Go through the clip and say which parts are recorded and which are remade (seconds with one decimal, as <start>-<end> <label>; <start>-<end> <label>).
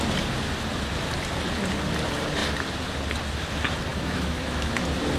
0.0-3.9 recorded; 3.9-4.7 remade; 4.7-5.2 recorded